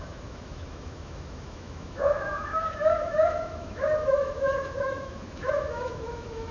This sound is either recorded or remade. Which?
remade